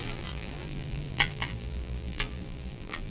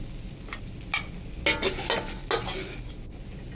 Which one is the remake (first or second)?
first